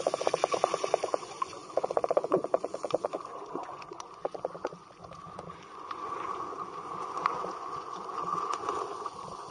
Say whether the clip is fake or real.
fake